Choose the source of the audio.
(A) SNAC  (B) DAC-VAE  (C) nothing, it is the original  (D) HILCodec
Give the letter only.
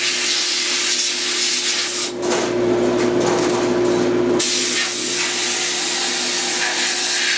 C